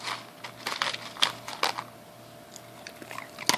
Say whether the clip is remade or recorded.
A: recorded